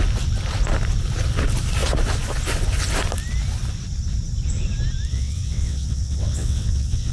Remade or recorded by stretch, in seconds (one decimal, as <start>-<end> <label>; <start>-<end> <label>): 0.0-5.1 recorded; 5.1-7.1 remade